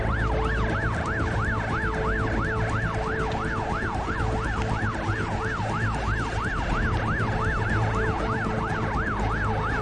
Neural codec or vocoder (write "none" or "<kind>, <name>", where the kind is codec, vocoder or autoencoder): none